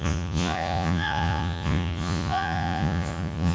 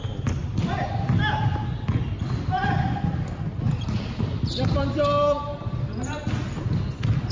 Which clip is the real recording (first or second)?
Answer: second